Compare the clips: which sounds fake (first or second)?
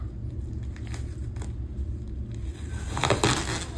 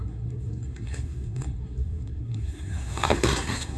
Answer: second